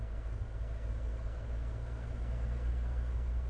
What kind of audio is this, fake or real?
fake